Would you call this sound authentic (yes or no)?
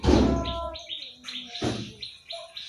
yes